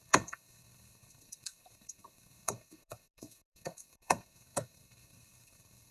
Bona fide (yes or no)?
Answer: no